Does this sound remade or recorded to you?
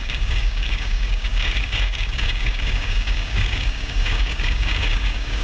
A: remade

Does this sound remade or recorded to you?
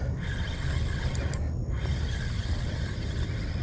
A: recorded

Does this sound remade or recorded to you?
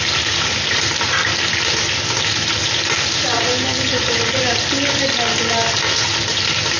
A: recorded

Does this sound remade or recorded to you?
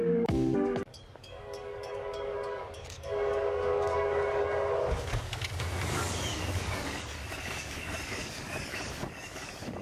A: remade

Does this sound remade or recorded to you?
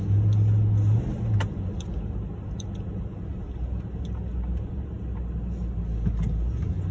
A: recorded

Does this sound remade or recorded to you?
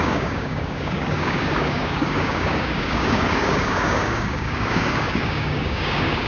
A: remade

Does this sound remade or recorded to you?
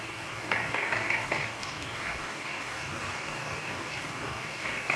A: remade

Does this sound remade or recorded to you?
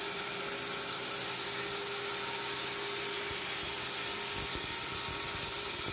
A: recorded